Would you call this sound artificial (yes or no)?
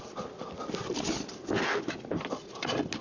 no